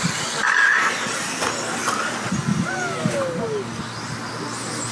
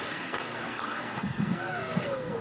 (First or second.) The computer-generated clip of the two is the second